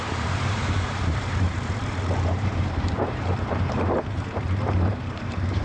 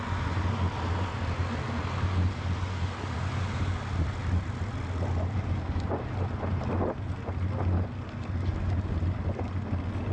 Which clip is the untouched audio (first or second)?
second